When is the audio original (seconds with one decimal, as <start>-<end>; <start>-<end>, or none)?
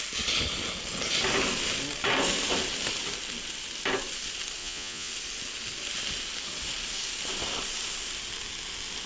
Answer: 0.0-4.6; 5.1-9.1